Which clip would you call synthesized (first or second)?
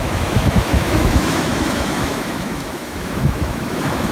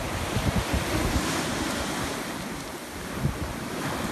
first